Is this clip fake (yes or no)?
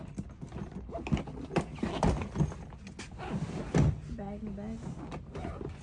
no